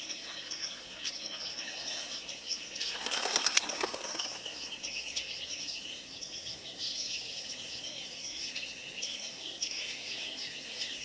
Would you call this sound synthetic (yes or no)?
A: yes